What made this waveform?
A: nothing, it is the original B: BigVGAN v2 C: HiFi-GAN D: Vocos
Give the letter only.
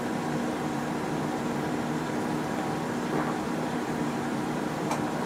B